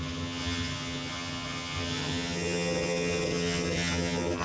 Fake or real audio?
fake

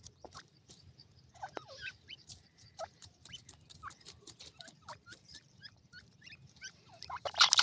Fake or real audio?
fake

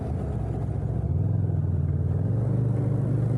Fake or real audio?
real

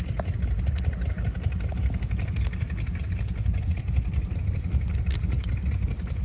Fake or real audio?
real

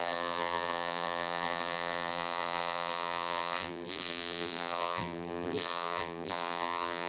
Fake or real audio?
fake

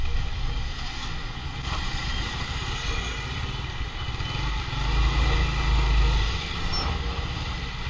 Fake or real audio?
real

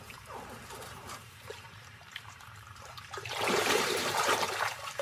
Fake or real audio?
fake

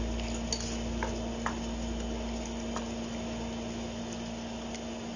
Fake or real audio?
real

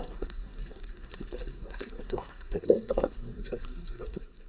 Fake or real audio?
fake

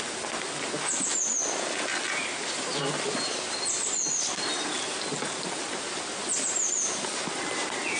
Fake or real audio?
real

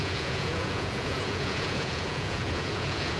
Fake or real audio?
fake